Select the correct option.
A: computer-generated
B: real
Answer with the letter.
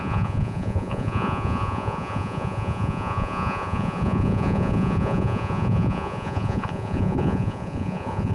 A